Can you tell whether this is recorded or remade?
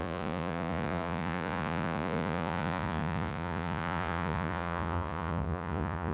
remade